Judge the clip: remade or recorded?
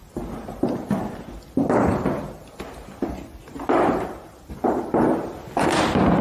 recorded